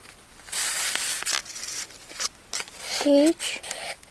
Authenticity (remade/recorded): recorded